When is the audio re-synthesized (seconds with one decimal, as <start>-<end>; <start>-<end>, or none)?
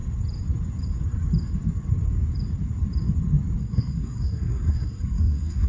3.6-5.7